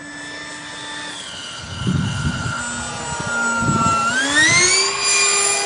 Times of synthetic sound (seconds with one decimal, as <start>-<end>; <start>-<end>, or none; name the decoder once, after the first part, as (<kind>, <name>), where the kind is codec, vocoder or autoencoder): 1.1-2.6 (codec, HILCodec)